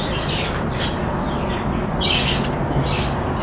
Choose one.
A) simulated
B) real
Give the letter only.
B